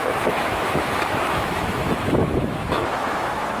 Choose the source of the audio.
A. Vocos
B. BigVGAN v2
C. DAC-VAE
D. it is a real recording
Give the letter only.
C